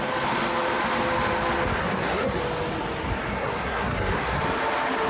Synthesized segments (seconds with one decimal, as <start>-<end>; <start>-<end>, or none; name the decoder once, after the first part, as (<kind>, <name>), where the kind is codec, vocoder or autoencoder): 1.8-2.4 (codec, SNAC); 3.3-4.4